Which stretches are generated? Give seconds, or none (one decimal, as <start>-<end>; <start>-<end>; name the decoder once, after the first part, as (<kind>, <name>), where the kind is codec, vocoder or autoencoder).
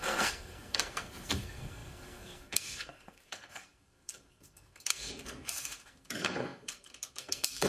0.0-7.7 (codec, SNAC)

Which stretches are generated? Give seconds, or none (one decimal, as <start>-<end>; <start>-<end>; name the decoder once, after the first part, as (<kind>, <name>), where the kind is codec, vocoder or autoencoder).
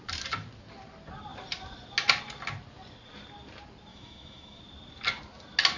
3.9-4.6 (autoencoder, DAC-VAE)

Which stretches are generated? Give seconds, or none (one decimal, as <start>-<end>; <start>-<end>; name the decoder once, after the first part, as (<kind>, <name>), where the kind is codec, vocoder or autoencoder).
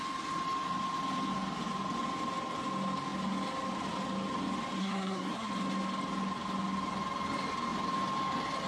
4.8-5.5 (codec, SNAC)